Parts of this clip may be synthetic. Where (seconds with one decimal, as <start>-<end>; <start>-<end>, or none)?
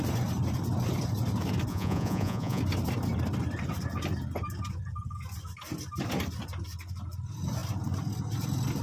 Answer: 1.7-2.6